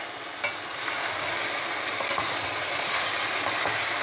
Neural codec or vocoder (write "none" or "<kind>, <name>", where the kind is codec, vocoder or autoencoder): none